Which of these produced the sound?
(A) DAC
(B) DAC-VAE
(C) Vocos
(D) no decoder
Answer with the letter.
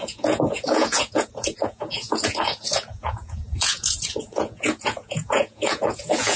C